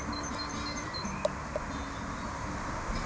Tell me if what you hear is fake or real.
real